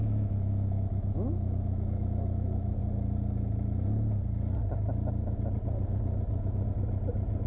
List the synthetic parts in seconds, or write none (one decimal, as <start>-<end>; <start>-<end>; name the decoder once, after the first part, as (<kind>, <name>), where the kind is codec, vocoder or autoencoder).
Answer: 0.0-2.8 (autoencoder, DAC-VAE)